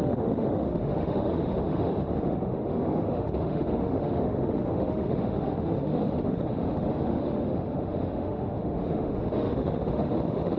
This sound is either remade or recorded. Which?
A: remade